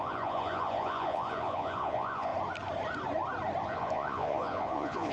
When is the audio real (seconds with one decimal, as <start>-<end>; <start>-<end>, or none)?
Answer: 2.3-3.7